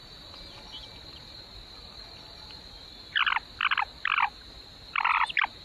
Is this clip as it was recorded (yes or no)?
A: yes